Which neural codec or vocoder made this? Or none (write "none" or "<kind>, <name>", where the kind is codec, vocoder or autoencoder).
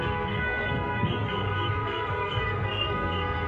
codec, SNAC